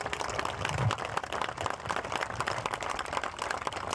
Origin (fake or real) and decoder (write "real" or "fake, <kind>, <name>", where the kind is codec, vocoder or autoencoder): real